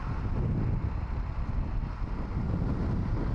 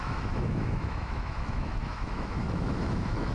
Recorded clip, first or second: first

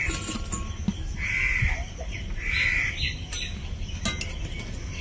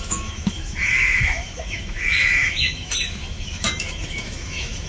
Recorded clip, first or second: first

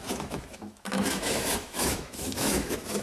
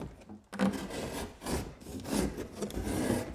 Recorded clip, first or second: second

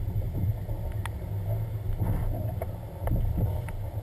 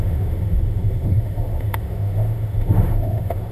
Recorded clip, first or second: first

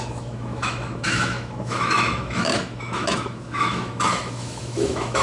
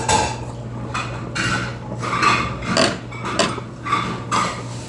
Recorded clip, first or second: second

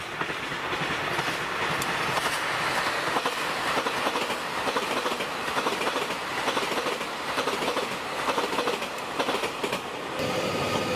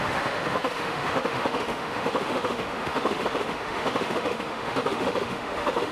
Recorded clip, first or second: first